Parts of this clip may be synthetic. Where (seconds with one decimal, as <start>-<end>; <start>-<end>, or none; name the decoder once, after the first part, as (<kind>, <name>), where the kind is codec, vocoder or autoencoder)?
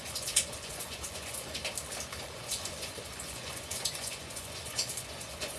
0.0-1.6 (vocoder, Vocos); 2.2-5.6